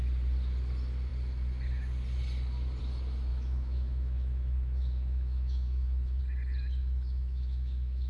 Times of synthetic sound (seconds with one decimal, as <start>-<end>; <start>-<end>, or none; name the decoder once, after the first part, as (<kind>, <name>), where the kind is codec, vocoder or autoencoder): 3.3-6.2 (autoencoder, DAC-VAE); 6.8-8.1